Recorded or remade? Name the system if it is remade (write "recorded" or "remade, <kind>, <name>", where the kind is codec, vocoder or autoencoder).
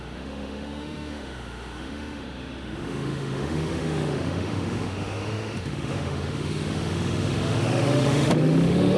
remade, autoencoder, DAC-VAE